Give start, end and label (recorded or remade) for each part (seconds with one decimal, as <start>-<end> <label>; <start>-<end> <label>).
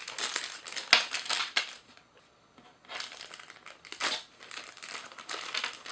0.0-5.9 recorded